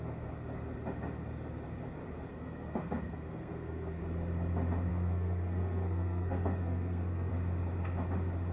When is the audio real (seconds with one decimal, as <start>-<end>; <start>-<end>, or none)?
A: 0.0-2.3; 4.0-4.9; 7.3-8.5